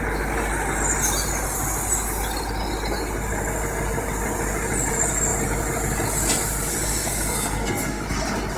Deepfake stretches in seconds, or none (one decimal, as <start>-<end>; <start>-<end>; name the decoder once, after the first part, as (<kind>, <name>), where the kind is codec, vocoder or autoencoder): 6.7-8.0 (codec, SNAC)